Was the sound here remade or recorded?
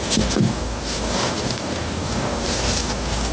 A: remade